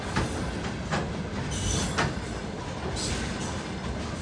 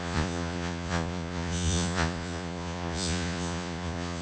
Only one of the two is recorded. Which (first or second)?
first